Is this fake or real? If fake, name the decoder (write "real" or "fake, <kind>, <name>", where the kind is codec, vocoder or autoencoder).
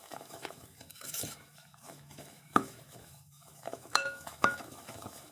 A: fake, autoencoder, DAC-VAE